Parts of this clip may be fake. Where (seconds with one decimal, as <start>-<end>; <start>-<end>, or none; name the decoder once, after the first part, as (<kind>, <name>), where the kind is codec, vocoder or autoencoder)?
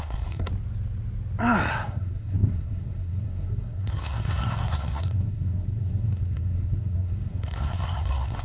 0.0-0.5 (codec, SNAC); 1.7-8.4